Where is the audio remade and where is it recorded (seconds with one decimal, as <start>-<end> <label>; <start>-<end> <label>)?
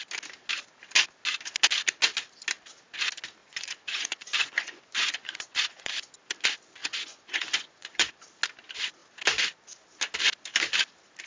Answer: 0.0-3.4 recorded; 3.4-5.9 remade; 5.9-6.8 recorded; 6.8-8.2 remade; 8.2-11.3 recorded